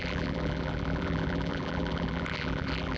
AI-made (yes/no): yes